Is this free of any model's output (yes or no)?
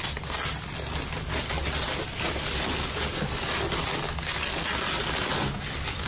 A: yes